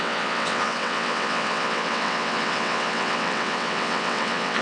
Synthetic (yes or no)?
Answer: yes